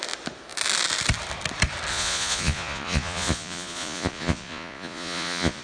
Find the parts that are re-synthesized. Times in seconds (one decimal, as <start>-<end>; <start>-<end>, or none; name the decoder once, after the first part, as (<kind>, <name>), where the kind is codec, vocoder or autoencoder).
1.9-5.6 (vocoder, Vocos)